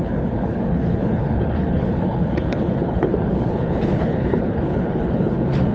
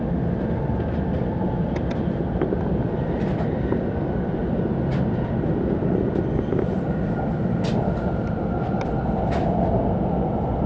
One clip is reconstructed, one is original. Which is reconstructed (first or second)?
first